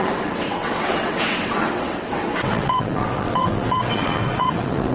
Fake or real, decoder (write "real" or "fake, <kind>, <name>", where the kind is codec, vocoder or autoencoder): fake, vocoder, WaveNeXt